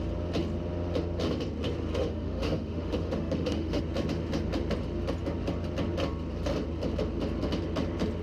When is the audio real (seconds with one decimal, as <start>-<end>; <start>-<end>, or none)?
0.0-1.9; 3.8-8.2